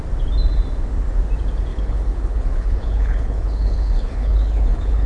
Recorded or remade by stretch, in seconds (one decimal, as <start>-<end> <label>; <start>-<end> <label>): 0.0-1.7 recorded; 1.7-5.1 remade